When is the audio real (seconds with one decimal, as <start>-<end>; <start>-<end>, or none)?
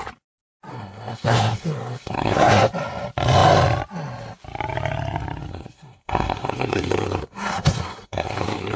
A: 0.0-0.7; 2.7-5.5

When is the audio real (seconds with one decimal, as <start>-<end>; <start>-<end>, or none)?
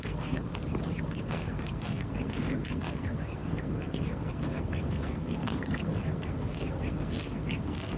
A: 0.5-1.0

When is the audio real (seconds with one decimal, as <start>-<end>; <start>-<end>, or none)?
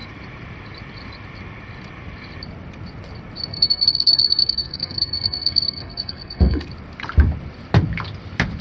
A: 0.0-3.5; 6.7-8.6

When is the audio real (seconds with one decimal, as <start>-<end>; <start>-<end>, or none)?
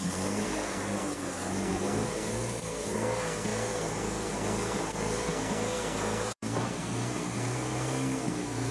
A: none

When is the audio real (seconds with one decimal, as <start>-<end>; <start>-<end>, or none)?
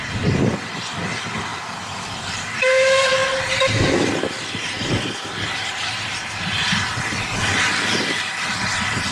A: 0.0-9.1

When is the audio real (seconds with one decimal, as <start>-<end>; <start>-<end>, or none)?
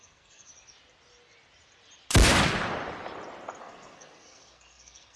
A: 0.5-3.6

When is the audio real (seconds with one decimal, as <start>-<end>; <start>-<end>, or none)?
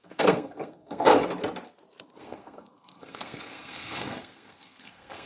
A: 1.1-2.2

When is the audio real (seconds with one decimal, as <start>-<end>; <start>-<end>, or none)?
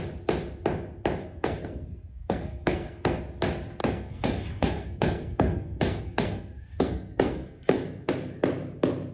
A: 0.0-1.2; 3.2-3.8; 8.1-9.1